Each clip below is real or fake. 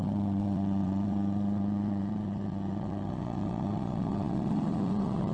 fake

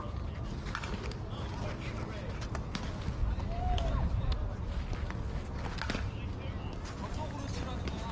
real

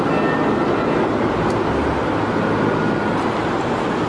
real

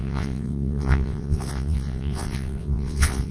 fake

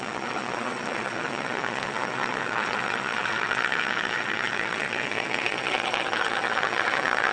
fake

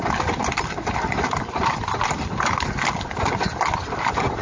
real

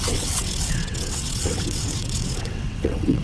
fake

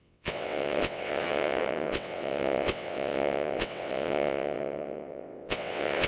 fake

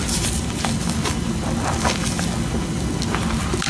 real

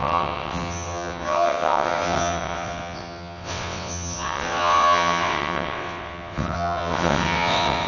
fake